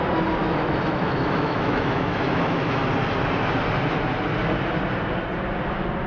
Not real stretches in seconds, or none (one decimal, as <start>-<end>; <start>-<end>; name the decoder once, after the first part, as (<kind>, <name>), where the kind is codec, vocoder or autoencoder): 0.4-2.8 (autoencoder, DAC-VAE)